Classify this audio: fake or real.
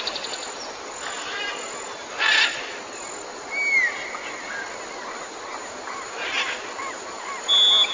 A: real